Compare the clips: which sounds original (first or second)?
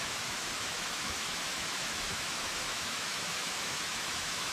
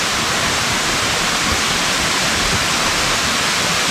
second